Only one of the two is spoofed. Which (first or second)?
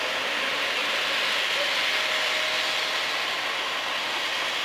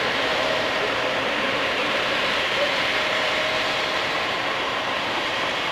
second